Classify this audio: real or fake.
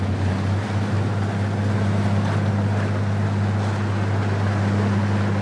real